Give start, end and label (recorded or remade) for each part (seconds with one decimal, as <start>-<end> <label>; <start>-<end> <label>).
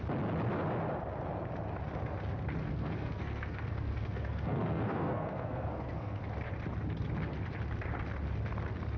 0.0-2.6 recorded; 2.6-6.2 remade; 6.2-9.0 recorded